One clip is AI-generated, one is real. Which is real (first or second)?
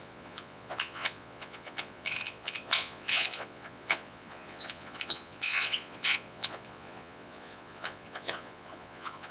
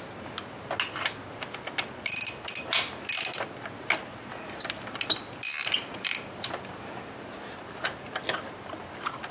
second